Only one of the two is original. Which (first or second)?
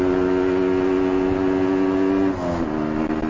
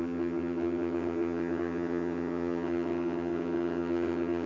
first